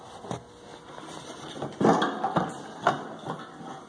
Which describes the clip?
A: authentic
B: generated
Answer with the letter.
A